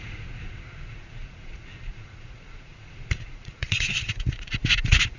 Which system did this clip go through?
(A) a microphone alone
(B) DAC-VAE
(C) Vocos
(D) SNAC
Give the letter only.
C